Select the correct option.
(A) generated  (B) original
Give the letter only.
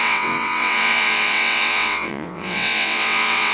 A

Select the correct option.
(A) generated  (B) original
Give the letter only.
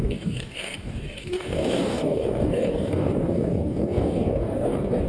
A